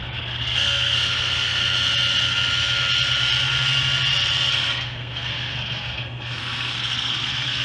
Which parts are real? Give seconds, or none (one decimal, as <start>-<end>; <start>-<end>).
1.6-4.5